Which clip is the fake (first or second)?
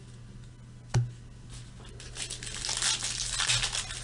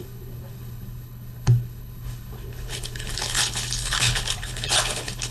second